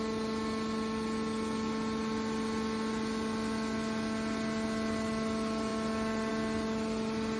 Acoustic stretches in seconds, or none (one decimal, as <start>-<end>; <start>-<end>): 0.0-7.4